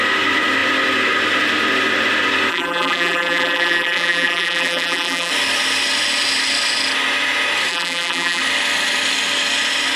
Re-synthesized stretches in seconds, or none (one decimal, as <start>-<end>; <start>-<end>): 2.5-5.3; 7.7-8.4